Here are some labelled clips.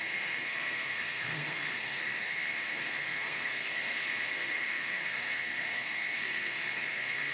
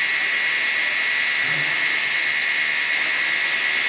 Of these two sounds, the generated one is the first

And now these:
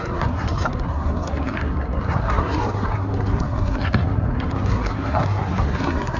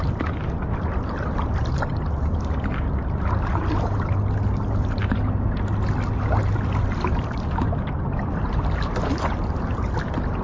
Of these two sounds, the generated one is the first